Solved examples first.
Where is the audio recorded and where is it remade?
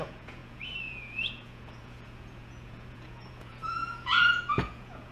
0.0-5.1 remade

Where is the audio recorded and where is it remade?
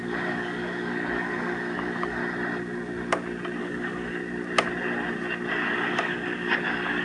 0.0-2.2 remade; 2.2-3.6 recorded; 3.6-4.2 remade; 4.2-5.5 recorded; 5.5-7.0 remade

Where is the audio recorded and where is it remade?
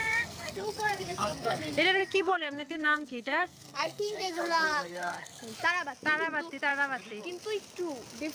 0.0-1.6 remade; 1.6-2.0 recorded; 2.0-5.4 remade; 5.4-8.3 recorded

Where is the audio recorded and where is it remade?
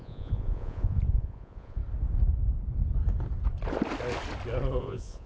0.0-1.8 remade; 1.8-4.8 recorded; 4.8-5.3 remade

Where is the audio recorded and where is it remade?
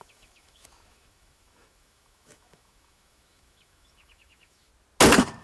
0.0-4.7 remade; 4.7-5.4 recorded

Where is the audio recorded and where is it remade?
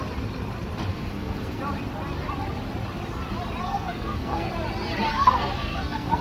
0.0-0.9 recorded; 0.9-1.6 remade; 1.6-3.6 recorded; 3.6-4.5 remade; 4.5-5.1 recorded; 5.1-6.2 remade